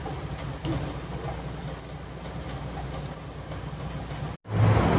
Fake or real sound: real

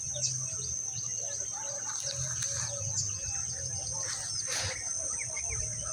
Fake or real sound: real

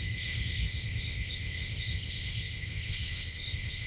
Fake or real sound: fake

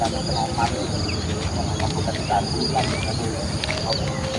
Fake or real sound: real